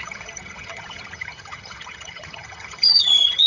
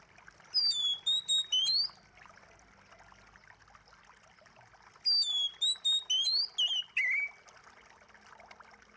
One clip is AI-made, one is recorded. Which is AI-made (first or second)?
first